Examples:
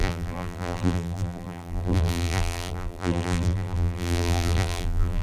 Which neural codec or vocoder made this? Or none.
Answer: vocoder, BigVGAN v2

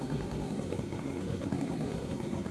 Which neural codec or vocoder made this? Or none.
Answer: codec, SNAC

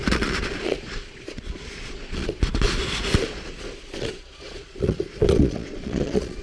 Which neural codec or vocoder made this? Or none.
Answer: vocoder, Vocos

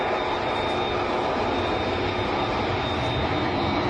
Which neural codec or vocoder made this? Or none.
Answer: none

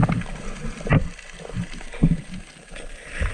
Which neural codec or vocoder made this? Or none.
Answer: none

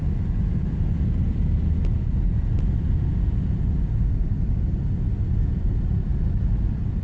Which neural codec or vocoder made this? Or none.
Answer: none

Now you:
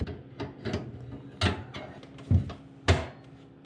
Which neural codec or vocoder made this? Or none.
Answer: none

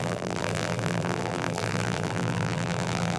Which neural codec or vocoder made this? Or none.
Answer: vocoder, BigVGAN v2